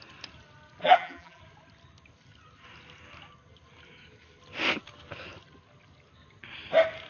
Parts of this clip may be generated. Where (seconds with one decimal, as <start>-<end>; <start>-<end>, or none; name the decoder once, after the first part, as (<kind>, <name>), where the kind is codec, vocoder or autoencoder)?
0.8-1.4 (vocoder, BigVGAN v2)